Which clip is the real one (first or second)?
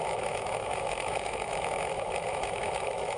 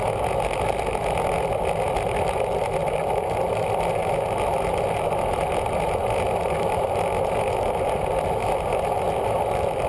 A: second